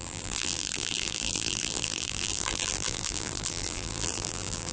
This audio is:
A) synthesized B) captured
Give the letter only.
A